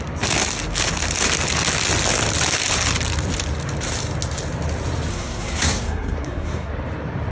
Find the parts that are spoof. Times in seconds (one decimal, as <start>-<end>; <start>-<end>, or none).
5.1-6.7